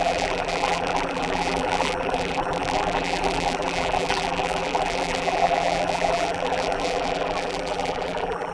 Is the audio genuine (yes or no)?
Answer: no